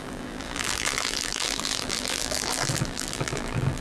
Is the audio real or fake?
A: fake